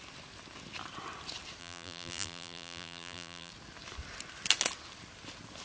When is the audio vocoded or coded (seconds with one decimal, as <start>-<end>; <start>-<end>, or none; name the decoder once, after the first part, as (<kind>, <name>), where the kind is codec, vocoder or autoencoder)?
1.6-3.5 (vocoder, BigVGAN v2)